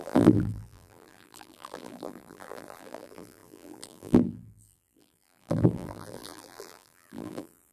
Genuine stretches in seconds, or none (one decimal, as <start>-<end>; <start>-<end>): none